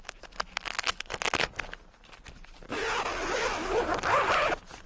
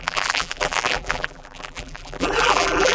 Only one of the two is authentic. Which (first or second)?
first